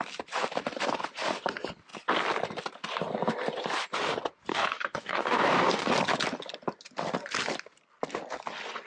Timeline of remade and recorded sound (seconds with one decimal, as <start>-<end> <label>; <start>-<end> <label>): 0.0-4.5 recorded; 4.5-5.9 remade; 5.9-8.9 recorded

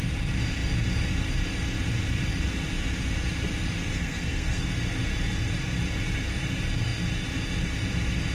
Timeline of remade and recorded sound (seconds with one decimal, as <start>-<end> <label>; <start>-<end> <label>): 0.0-3.9 recorded; 3.9-4.7 remade; 4.7-8.3 recorded

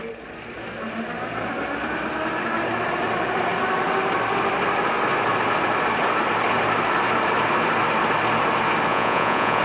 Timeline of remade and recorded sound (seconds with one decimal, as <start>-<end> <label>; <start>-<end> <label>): 0.0-8.9 recorded; 8.9-9.6 remade

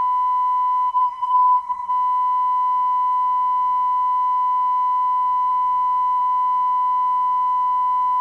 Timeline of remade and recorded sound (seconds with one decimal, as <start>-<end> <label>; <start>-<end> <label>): 0.0-0.9 recorded; 0.9-1.9 remade; 1.9-8.2 recorded

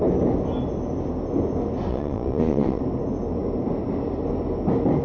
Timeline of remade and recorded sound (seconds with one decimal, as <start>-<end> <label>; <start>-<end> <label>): 0.0-1.9 recorded; 1.9-2.8 remade; 2.8-5.0 recorded

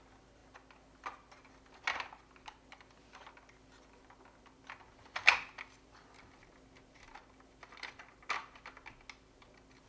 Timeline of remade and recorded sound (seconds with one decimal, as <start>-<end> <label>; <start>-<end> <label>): 0.0-9.9 recorded

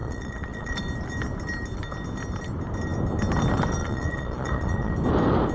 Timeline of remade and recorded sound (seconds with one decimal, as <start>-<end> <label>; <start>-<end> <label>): 0.0-0.8 remade; 0.8-3.8 recorded; 3.8-4.9 remade; 4.9-5.5 recorded